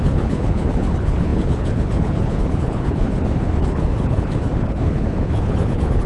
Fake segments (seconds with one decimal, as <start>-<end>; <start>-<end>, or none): 0.0-6.1